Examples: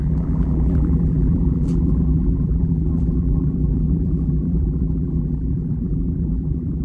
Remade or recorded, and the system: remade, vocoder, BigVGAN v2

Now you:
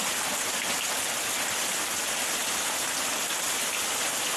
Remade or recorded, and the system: remade, vocoder, BigVGAN v2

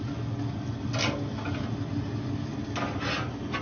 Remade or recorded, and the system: recorded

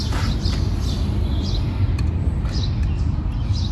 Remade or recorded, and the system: recorded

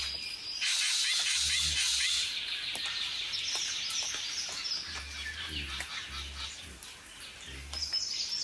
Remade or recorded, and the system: recorded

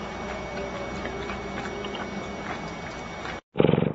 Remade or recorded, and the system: recorded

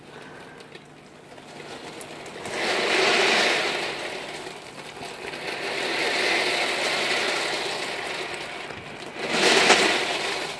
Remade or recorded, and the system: recorded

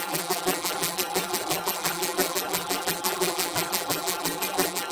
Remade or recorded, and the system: remade, vocoder, BigVGAN v2